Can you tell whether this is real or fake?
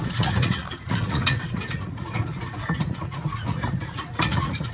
fake